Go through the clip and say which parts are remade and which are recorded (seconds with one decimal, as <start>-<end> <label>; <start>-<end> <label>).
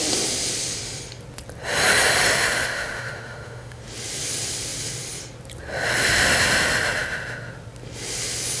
0.0-2.6 recorded; 2.6-3.8 remade; 3.8-8.6 recorded